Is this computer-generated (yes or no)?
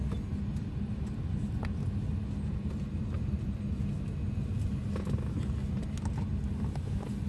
no